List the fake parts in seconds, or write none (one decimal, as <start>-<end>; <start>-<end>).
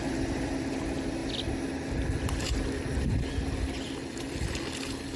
none